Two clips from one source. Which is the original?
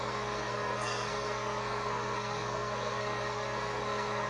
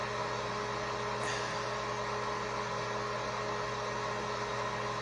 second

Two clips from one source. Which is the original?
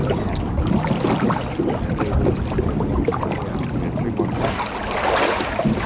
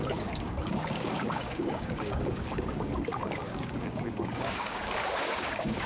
first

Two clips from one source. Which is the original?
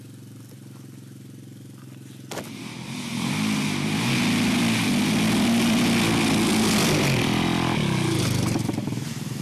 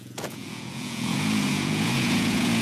first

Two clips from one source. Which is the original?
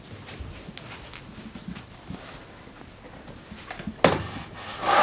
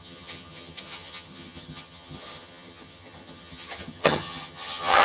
first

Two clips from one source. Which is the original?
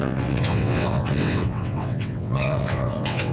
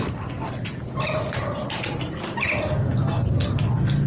second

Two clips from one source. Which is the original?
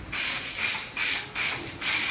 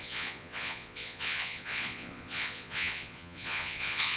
first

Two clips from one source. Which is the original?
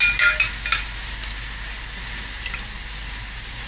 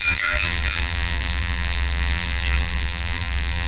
first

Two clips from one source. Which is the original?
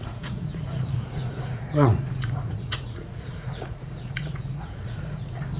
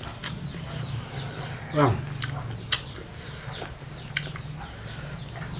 second